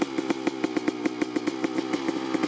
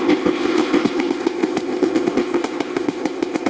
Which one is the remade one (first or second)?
second